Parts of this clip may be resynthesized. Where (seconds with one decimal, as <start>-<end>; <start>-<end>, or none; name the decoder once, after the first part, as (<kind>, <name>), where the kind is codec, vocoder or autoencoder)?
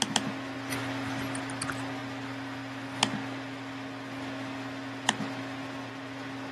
none